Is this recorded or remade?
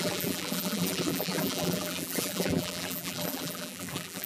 remade